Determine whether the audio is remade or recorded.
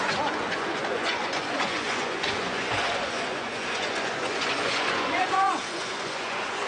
remade